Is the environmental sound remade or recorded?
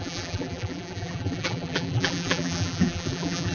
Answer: remade